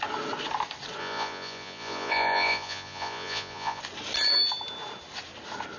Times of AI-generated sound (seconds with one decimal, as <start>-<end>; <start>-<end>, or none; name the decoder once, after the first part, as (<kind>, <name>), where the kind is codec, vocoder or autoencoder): 1.0-3.8 (vocoder, Vocos)